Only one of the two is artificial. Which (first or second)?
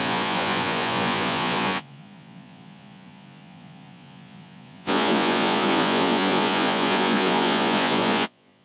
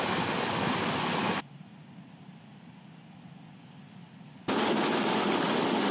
first